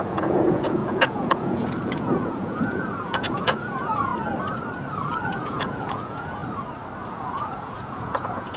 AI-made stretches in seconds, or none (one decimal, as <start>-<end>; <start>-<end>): 0.0-4.1; 5.3-6.4; 7.1-8.6